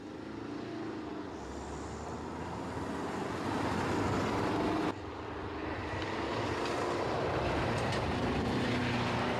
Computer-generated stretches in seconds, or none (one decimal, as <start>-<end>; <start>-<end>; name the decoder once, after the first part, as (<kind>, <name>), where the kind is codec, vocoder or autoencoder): none